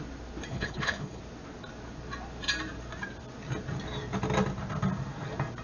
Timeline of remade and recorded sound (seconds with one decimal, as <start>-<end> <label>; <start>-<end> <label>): 0.0-0.5 recorded; 0.5-1.2 remade; 1.2-5.6 recorded